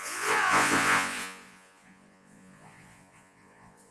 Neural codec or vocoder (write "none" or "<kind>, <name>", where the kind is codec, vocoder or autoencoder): vocoder, Vocos